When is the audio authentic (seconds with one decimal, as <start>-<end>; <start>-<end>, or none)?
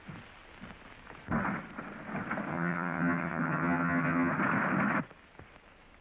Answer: 0.0-2.5; 4.3-6.0